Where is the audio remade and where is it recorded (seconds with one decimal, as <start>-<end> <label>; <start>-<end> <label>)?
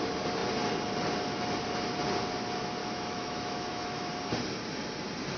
0.0-2.8 recorded; 2.8-4.1 remade; 4.1-5.4 recorded